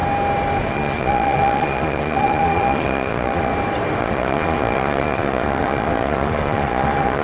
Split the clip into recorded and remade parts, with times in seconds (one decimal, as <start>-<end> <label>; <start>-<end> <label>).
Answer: 0.0-0.7 recorded; 0.7-3.5 remade; 3.5-4.0 recorded; 4.0-7.2 remade